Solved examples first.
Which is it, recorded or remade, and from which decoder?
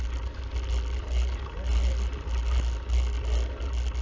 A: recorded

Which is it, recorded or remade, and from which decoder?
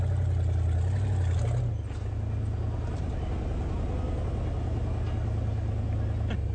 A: recorded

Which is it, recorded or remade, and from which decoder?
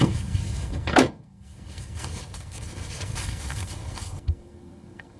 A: remade, codec, SNAC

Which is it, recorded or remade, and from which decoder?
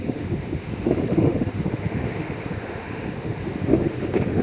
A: remade, autoencoder, DAC-VAE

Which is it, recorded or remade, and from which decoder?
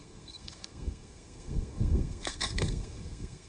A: remade, codec, SNAC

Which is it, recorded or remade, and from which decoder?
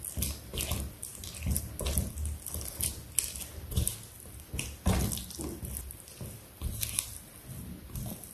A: recorded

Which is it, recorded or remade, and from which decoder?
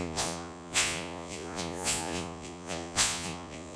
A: remade, vocoder, Vocos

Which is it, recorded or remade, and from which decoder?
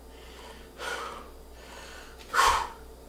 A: recorded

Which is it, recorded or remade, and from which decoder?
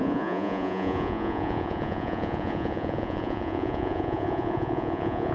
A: remade, vocoder, Vocos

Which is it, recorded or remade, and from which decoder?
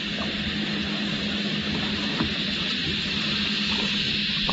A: recorded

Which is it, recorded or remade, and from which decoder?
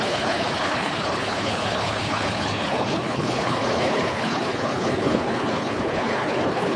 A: remade, codec, HILCodec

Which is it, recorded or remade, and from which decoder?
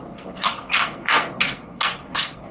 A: remade, codec, SNAC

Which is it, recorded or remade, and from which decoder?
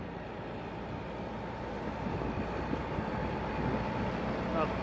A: recorded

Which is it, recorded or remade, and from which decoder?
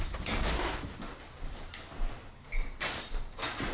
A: recorded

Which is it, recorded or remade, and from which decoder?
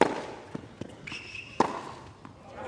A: recorded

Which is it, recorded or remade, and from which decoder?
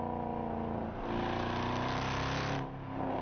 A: recorded